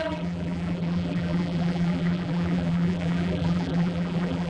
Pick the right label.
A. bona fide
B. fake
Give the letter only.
B